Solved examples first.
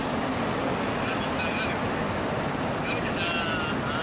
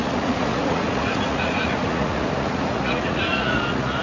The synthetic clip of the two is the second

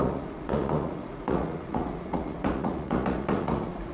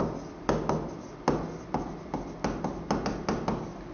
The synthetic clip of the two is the first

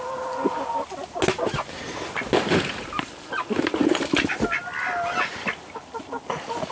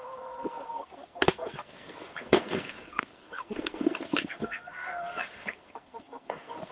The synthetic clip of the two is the second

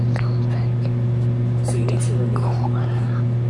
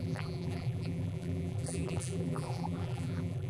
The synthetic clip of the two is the second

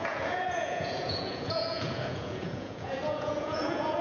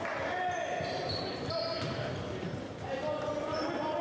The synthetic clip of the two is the first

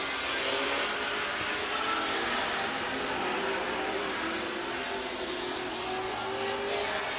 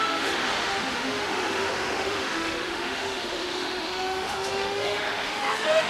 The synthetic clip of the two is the second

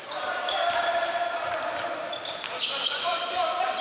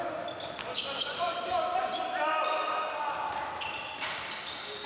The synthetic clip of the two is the first